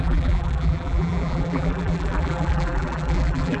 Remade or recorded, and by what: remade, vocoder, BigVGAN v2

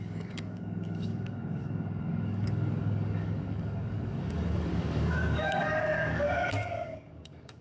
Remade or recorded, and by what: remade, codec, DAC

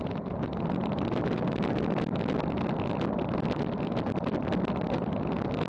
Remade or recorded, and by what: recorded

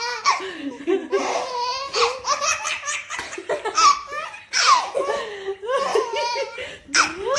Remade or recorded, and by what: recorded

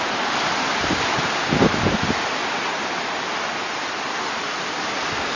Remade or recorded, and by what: recorded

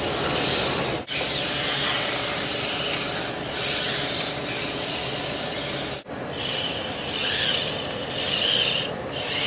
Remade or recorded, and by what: recorded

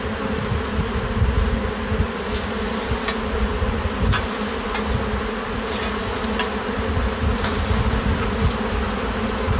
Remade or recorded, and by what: recorded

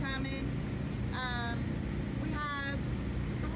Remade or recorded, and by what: recorded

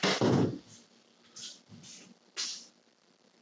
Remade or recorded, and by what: recorded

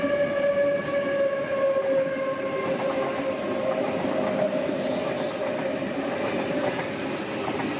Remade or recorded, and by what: recorded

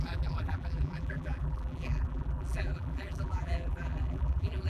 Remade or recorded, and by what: remade, vocoder, BigVGAN v2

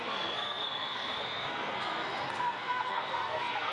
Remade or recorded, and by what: remade, codec, SNAC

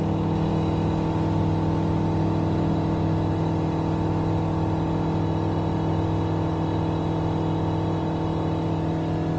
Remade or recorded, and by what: recorded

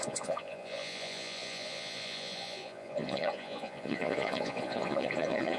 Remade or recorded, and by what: remade, vocoder, Vocos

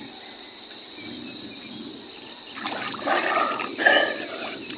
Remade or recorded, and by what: recorded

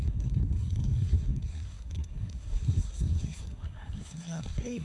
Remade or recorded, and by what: remade, codec, SNAC